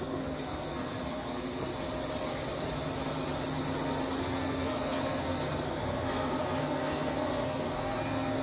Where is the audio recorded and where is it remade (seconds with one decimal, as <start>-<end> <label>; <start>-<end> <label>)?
0.0-1.7 remade; 1.7-4.2 recorded; 4.2-8.4 remade